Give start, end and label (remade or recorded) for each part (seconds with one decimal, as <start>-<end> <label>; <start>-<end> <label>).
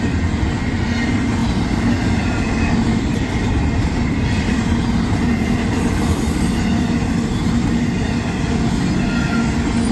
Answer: 0.0-1.4 recorded; 1.4-4.5 remade; 4.5-9.9 recorded